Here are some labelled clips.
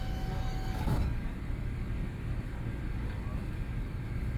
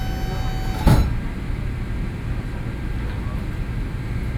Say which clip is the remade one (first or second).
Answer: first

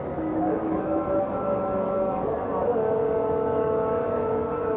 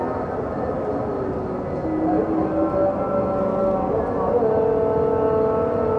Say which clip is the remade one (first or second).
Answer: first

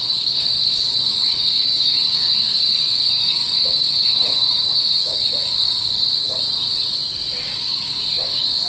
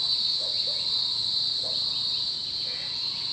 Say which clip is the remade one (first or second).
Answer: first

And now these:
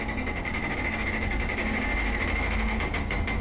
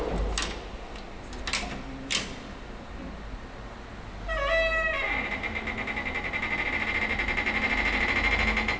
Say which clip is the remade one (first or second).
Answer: first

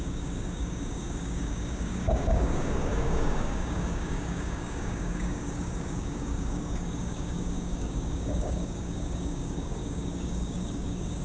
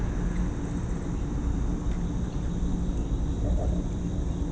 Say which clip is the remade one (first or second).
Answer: first